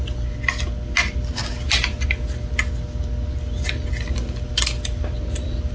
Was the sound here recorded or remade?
recorded